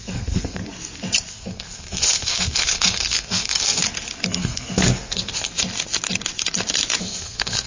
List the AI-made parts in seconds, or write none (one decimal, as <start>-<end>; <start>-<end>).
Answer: 0.0-0.6; 1.3-3.8; 4.4-5.5; 7.0-7.7